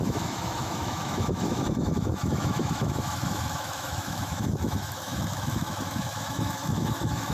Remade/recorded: remade